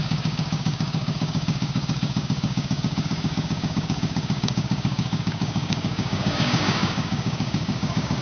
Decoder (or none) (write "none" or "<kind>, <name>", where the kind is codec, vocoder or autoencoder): codec, DAC